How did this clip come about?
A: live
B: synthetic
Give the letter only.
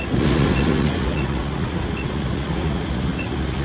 B